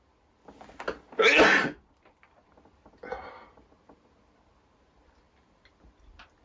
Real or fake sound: real